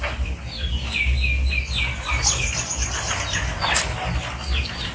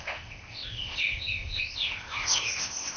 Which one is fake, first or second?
second